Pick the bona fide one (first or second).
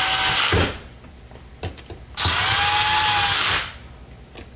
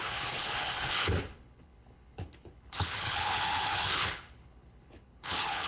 first